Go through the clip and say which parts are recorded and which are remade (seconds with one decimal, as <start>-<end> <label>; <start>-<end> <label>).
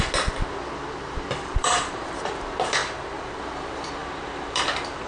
0.0-1.6 recorded; 1.6-2.2 remade; 2.2-2.8 recorded; 2.8-3.4 remade; 3.4-4.0 recorded; 4.0-5.1 remade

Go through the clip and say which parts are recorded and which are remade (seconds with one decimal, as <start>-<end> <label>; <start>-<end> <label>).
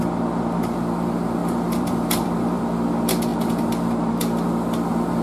0.0-1.4 recorded; 1.4-2.6 remade; 2.6-5.2 recorded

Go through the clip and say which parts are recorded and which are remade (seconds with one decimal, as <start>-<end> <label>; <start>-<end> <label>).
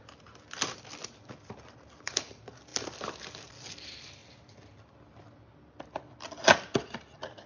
0.0-4.2 remade; 4.2-7.5 recorded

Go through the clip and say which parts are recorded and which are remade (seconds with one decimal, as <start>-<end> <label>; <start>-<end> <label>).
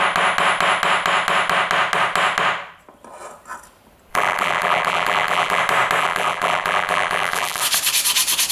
0.0-4.1 recorded; 4.1-5.6 remade; 5.6-6.0 recorded; 6.0-7.6 remade; 7.6-8.5 recorded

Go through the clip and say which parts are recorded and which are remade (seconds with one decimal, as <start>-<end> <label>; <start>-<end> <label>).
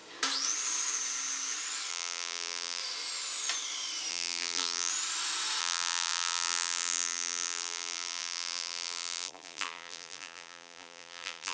0.0-1.9 recorded; 1.9-2.8 remade; 2.8-4.1 recorded; 4.1-4.9 remade; 4.9-5.6 recorded; 5.6-11.5 remade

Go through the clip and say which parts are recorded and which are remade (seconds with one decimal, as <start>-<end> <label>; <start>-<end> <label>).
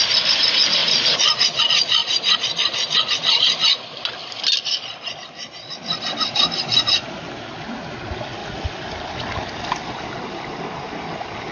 0.0-8.4 recorded; 8.4-9.1 remade; 9.1-11.5 recorded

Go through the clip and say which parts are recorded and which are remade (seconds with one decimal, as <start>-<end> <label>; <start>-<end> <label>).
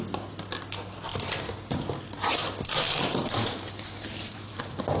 0.0-2.4 recorded; 2.4-4.6 remade; 4.6-5.0 recorded